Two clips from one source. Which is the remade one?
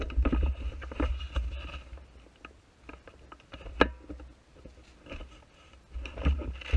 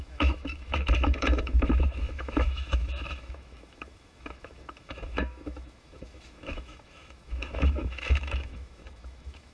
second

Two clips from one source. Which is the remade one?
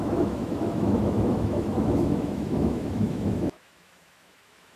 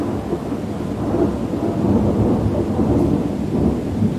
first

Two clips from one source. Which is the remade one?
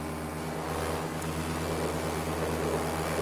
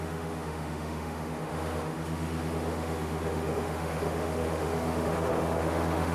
second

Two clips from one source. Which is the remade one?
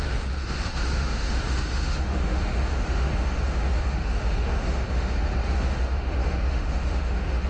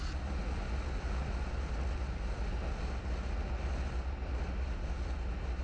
first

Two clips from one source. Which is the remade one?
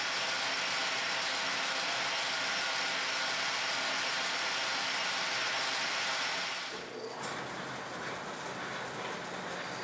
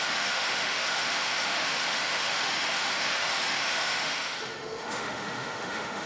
second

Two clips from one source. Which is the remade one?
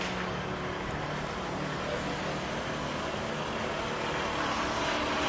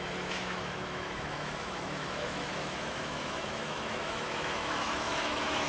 second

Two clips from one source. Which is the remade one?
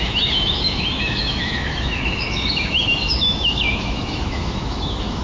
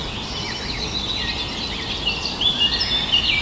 first